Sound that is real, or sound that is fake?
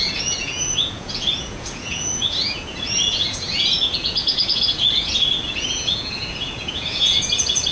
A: fake